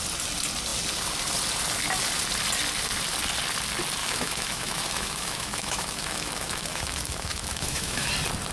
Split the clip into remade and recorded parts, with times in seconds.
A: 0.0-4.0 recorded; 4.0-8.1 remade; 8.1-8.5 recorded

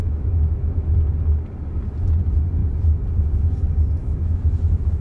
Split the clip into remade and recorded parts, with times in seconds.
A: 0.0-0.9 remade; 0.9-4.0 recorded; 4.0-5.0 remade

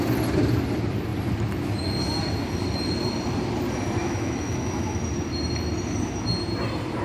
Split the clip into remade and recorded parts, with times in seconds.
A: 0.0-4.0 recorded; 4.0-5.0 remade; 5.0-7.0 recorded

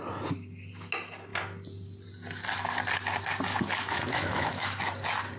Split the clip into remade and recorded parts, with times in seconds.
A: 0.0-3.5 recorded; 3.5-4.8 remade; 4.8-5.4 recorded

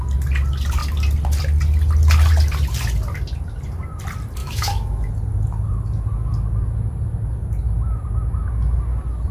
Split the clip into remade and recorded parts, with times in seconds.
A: 0.0-4.4 recorded; 4.4-5.1 remade; 5.1-9.3 recorded

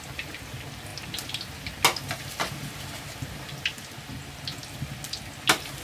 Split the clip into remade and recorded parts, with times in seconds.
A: 0.0-5.8 recorded

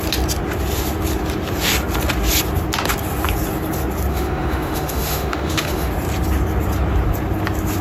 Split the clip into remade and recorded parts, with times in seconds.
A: 0.0-4.1 recorded; 4.1-5.9 remade; 5.9-7.8 recorded

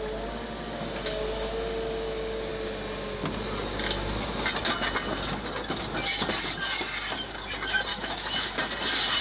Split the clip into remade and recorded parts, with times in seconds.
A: 0.0-7.9 recorded; 7.9-8.6 remade; 8.6-9.2 recorded